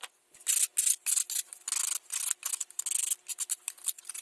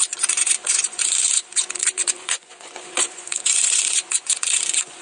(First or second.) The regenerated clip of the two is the second